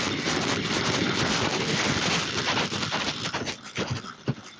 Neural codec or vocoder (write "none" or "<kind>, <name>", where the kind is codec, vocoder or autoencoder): none